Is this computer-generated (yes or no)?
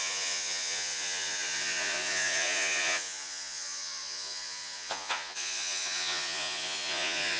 yes